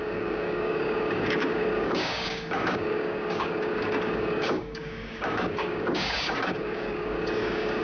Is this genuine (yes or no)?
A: no